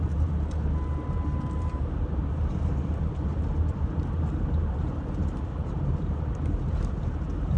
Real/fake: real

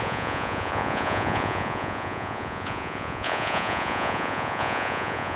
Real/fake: fake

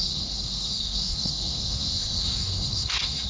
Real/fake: fake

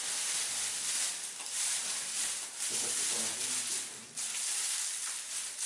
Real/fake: real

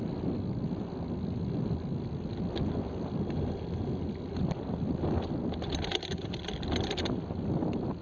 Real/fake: real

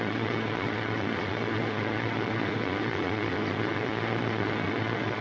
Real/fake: fake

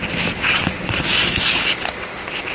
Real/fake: real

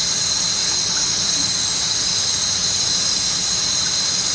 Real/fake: real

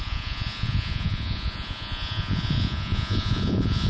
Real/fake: fake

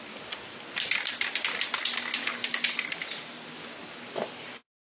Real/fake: real